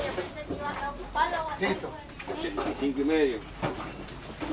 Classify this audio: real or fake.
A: real